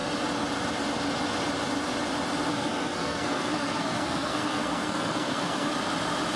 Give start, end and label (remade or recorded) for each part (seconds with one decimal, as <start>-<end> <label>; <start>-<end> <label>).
0.0-2.5 recorded; 2.5-5.7 remade; 5.7-6.4 recorded